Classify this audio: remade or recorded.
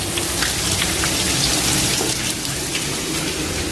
recorded